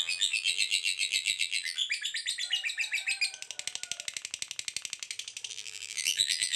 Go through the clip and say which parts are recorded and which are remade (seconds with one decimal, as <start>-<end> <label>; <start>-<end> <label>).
0.0-1.8 remade; 1.8-5.5 recorded; 5.5-6.6 remade